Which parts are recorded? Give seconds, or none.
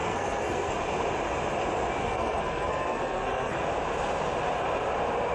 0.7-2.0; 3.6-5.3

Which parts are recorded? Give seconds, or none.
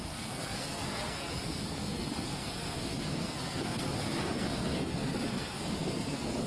none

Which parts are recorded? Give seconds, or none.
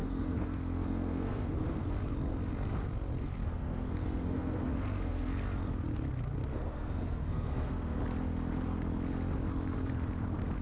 1.9-3.4; 5.3-6.5; 8.0-10.6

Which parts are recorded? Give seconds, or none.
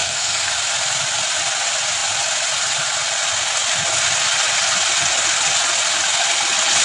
0.5-6.8